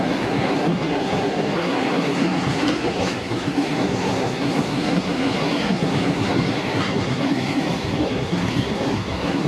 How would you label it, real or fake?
fake